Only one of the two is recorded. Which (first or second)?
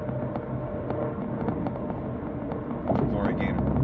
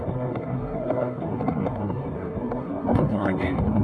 first